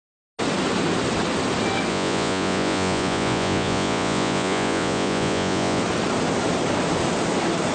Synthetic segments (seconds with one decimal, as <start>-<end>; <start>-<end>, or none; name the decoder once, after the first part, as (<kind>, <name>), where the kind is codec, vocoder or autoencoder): 1.9-5.8 (vocoder, Vocos)